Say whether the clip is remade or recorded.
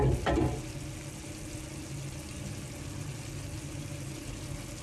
recorded